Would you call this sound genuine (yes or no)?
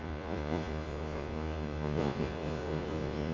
no